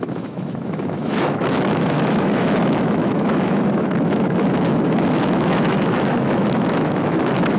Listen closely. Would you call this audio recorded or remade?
remade